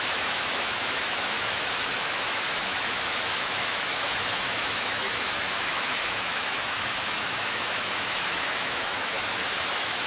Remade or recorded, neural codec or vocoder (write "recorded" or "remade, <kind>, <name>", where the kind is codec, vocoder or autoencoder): remade, autoencoder, DAC-VAE